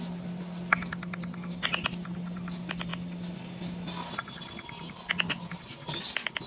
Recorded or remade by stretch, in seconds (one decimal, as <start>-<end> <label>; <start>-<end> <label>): 0.0-6.5 recorded